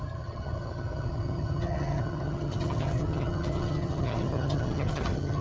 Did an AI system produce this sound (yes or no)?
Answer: yes